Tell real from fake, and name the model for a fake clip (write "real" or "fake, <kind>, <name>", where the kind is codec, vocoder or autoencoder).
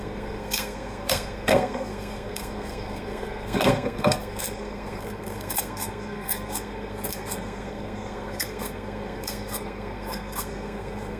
fake, codec, SNAC